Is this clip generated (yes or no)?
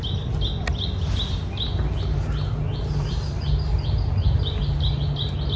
no